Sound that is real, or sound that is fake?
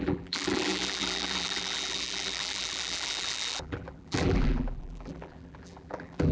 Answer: fake